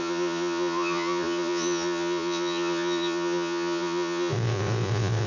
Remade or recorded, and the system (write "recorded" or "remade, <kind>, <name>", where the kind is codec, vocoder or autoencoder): remade, vocoder, Vocos